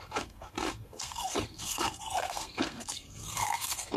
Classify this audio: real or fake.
fake